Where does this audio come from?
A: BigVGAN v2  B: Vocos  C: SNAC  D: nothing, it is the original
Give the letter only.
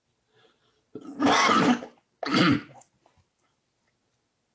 D